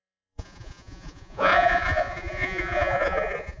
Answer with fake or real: fake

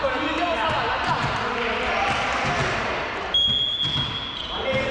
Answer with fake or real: real